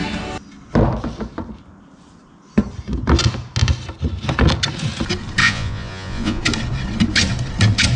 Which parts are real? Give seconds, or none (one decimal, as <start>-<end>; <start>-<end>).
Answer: 0.0-5.4; 6.4-8.0